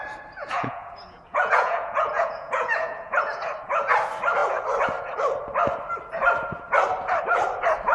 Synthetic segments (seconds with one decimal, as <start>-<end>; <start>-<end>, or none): 0.4-3.5

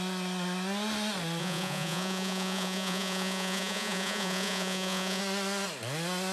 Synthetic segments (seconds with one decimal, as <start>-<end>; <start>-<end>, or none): 1.4-5.2

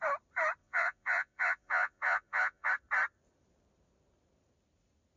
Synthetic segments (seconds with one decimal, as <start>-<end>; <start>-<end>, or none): 0.6-2.7

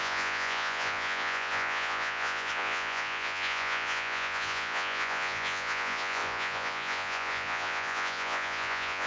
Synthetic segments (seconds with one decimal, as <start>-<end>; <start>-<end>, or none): 0.0-9.1

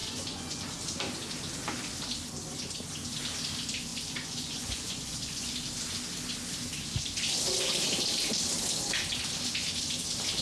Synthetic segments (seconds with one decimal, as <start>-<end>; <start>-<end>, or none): 0.0-0.6; 3.9-5.5

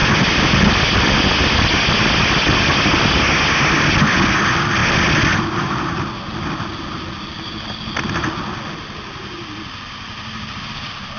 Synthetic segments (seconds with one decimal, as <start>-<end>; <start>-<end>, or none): none

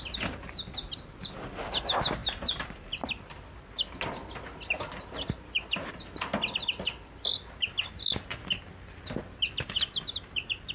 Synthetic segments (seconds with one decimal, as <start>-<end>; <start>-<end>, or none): none